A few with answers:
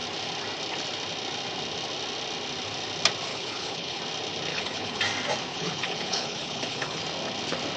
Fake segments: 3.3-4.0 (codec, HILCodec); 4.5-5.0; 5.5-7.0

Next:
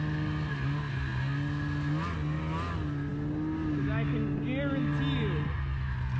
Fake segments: none

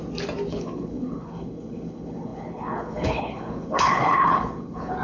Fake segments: 0.5-5.0 (codec, HILCodec)